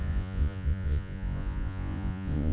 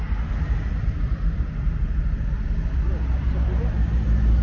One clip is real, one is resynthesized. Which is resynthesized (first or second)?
first